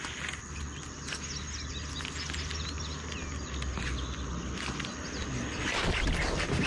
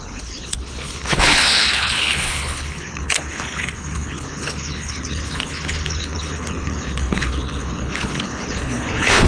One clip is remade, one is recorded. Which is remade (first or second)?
second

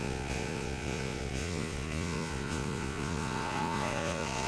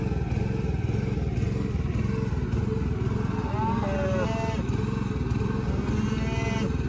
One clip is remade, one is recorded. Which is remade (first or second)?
first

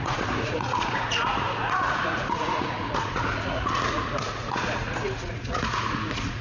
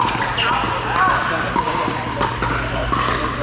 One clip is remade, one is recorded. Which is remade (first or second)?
first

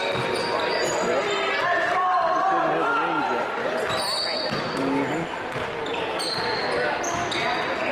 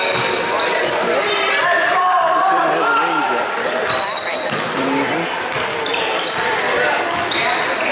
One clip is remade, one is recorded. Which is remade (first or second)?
second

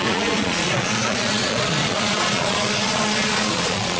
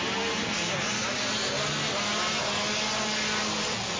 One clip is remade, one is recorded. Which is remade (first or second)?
first